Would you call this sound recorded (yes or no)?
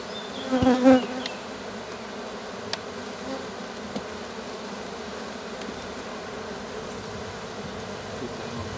yes